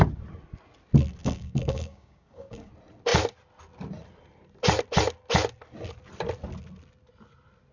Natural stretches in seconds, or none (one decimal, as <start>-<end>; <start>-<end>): 0.0-1.2; 2.7-7.7